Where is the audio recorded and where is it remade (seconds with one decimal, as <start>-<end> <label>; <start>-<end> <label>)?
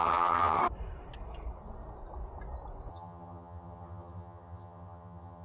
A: 0.0-0.6 remade; 0.6-2.9 recorded; 2.9-5.4 remade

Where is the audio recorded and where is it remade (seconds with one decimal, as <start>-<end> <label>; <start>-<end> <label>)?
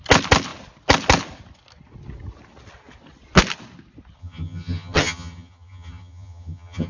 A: 0.0-4.2 recorded; 4.2-6.9 remade